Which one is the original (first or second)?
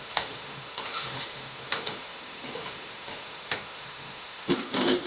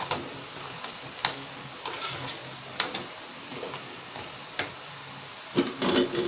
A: second